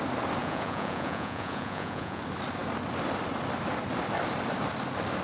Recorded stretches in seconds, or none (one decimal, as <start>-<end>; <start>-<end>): 0.0-0.4; 2.2-5.2